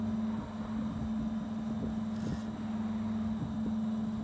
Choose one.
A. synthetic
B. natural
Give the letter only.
B